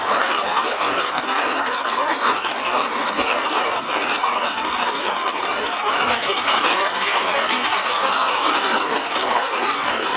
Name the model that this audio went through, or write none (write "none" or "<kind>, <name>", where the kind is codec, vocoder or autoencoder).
codec, DAC